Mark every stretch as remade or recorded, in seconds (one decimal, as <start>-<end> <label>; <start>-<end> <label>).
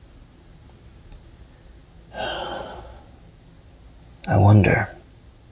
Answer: 0.0-5.5 recorded